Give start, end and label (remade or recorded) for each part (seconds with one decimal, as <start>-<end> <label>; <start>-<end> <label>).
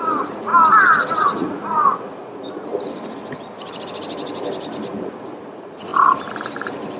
0.0-0.5 remade; 0.5-1.2 recorded; 1.2-2.7 remade; 2.7-5.0 recorded; 5.0-5.9 remade; 5.9-7.0 recorded